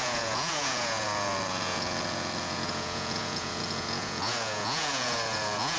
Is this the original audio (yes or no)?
no